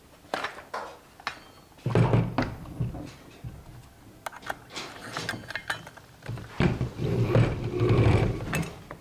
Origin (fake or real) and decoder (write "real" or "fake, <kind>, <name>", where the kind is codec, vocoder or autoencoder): real